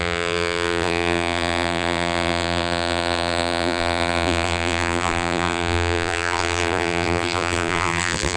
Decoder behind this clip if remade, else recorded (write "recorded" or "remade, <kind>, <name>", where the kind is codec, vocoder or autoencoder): remade, vocoder, BigVGAN v2